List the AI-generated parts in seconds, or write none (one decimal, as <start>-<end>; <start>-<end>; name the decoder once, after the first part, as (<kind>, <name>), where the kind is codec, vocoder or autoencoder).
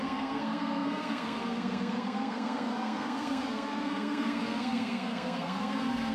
0.0-6.1 (codec, SNAC)